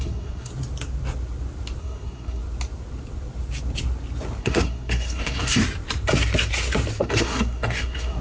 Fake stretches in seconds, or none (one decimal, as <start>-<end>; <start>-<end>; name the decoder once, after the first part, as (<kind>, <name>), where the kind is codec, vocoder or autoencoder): 0.0-0.5 (codec, SNAC); 1.8-2.4; 4.4-5.6; 7.0-8.2